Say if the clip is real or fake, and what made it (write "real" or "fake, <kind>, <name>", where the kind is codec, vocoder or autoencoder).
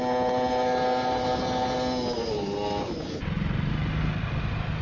real